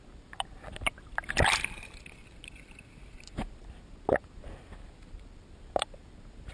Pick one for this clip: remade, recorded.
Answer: recorded